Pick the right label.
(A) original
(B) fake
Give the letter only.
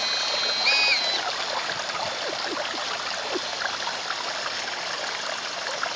A